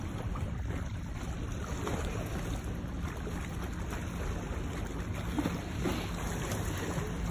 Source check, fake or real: real